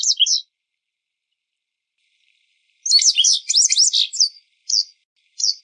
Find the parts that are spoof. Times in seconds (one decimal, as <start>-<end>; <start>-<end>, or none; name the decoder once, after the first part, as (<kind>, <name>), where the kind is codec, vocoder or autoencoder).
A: none